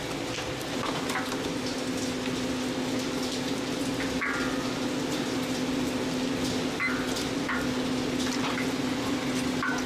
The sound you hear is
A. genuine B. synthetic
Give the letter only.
A